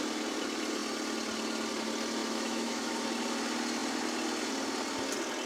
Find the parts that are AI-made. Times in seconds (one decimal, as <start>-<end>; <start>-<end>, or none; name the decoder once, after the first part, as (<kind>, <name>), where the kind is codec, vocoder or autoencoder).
2.2-2.9 (autoencoder, DAC-VAE)